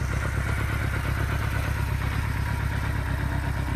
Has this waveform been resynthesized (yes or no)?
no